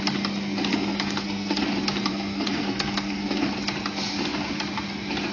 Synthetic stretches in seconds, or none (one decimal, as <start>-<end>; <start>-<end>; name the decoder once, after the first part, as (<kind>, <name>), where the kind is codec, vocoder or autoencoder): 0.7-1.6 (codec, SNAC); 2.1-3.4